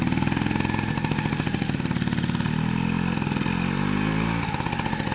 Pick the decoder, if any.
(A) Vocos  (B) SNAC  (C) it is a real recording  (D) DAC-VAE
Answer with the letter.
C